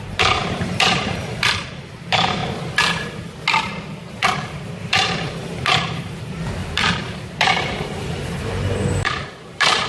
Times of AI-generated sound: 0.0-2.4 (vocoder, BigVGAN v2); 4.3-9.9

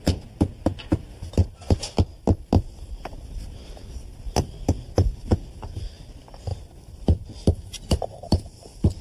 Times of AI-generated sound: 6.5-9.0 (vocoder, BigVGAN v2)

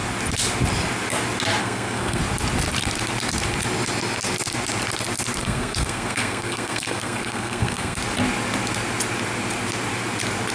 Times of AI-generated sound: 1.6-2.2 (codec, SNAC); 5.4-8.0

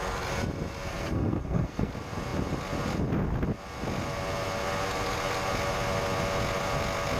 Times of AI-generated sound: 0.9-1.9 (codec, SNAC)